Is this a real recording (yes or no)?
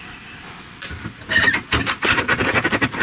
no